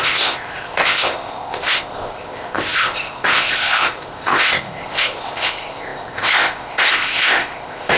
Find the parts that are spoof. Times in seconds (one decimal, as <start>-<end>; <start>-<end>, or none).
0.0-8.0